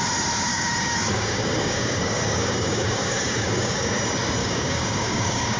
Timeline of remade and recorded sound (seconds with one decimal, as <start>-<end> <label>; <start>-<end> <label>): 0.0-0.5 recorded; 0.5-3.9 remade; 3.9-4.4 recorded; 4.4-5.6 remade